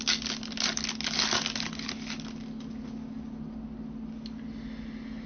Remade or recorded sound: recorded